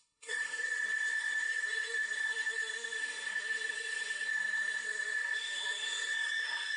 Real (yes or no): no